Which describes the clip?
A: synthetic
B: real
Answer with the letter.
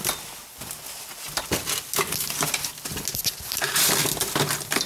B